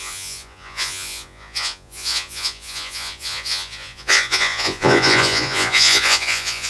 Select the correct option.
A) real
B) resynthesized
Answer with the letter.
B